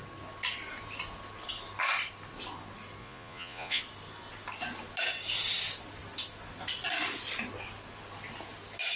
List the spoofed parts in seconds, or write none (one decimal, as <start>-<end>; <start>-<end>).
3.0-3.8